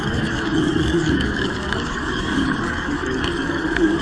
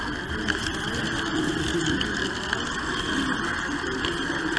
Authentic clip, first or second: second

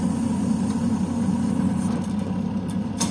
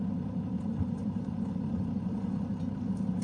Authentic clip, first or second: first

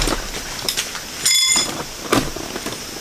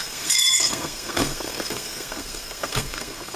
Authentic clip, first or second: first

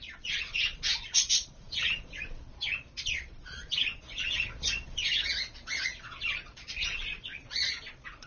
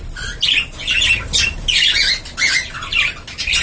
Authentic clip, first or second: second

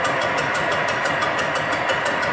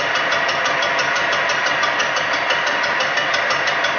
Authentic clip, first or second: second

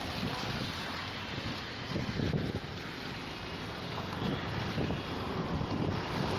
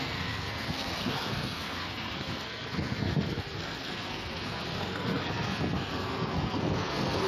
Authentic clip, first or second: first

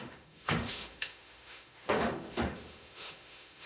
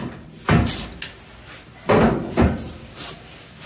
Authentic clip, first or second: second